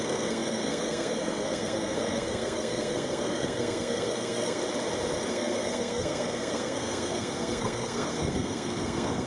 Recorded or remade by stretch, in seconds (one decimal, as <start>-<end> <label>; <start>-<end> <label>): 0.0-4.6 remade; 4.6-5.3 recorded; 5.3-9.3 remade